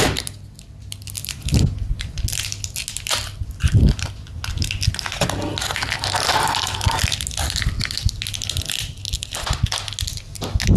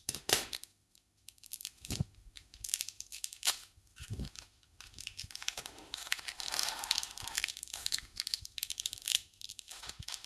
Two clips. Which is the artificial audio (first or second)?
second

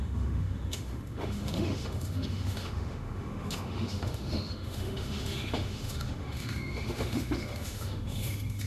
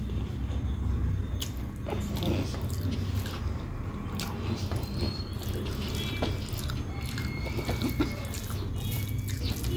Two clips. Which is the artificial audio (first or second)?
first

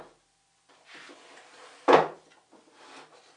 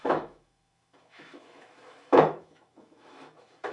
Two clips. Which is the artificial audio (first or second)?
second